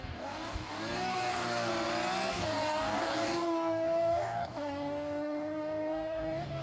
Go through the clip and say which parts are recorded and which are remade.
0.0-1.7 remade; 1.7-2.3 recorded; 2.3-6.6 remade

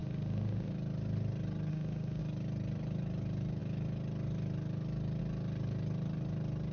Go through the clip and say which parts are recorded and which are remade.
0.0-0.7 remade; 0.7-1.7 recorded; 1.7-2.2 remade; 2.2-6.7 recorded

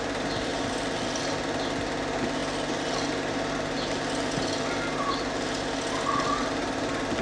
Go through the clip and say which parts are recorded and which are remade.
0.0-7.2 recorded

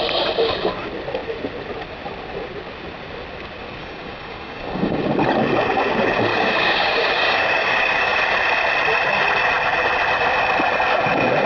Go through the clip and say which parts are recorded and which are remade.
0.0-3.8 recorded; 3.8-5.0 remade; 5.0-6.3 recorded; 6.3-8.2 remade; 8.2-11.5 recorded

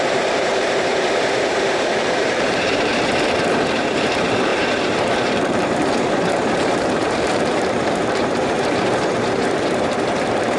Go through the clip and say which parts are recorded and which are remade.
0.0-10.6 remade

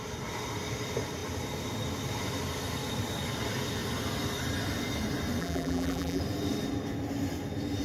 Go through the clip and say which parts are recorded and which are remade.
0.0-5.4 recorded; 5.4-6.2 remade; 6.2-7.8 recorded

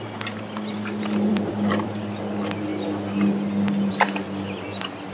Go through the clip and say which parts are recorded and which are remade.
0.0-1.3 recorded; 1.3-2.2 remade; 2.2-5.1 recorded

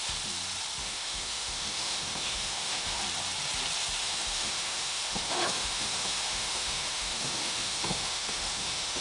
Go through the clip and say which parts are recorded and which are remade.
0.0-0.8 recorded; 0.8-3.0 remade; 3.0-4.0 recorded; 4.0-9.0 remade